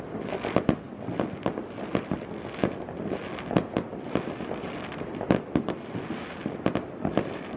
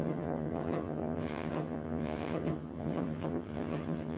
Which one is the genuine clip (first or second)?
first